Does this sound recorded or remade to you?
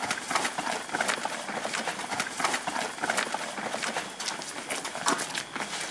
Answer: recorded